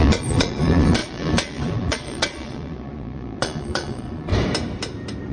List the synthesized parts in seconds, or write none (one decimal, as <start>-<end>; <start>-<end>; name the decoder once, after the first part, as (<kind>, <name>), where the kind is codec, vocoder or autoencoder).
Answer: 0.0-4.3 (vocoder, Vocos)